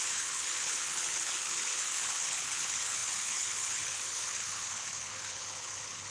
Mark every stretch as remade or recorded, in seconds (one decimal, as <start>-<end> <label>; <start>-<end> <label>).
0.0-6.1 remade